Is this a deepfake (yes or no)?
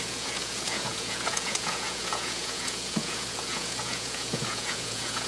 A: yes